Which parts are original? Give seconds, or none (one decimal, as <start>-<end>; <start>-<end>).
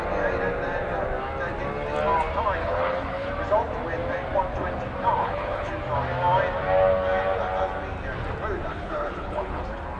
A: 0.0-2.6; 3.3-5.2; 5.7-8.7; 9.6-10.0